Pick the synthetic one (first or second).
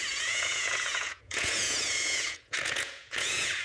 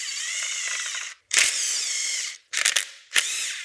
first